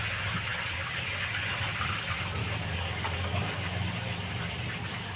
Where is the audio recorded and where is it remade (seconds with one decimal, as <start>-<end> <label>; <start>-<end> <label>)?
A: 0.0-2.4 recorded; 2.4-3.5 remade; 3.5-5.2 recorded